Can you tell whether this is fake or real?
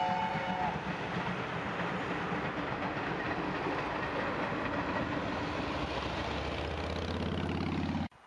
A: real